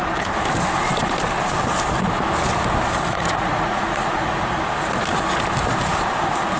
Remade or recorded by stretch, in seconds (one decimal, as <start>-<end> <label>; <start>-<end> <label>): 0.0-3.1 recorded; 3.1-4.5 remade; 4.5-6.6 recorded